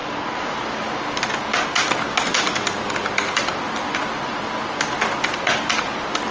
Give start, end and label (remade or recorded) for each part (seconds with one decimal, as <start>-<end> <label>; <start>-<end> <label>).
0.0-6.3 recorded